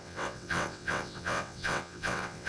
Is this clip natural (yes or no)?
no